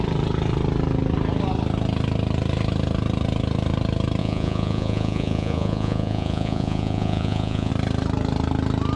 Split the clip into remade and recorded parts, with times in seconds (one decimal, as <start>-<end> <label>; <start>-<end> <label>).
0.0-4.2 recorded; 4.2-7.7 remade; 7.7-9.0 recorded